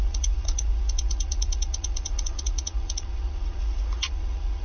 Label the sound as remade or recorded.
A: remade